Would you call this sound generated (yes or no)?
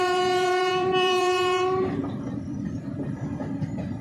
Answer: yes